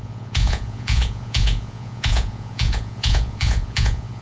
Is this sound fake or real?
fake